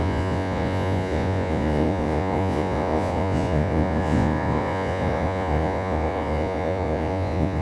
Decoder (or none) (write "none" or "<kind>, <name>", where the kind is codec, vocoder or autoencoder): vocoder, Vocos